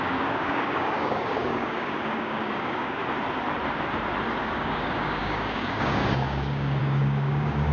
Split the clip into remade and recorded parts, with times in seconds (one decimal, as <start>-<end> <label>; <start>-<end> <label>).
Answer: 0.0-3.0 remade; 3.0-4.4 recorded; 4.4-7.7 remade

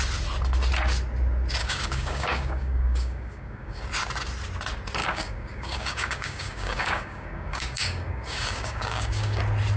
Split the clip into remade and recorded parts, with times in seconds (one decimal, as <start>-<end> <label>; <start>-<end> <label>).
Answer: 0.0-1.6 recorded; 1.6-3.8 remade; 3.8-5.0 recorded; 5.0-9.4 remade; 9.4-9.8 recorded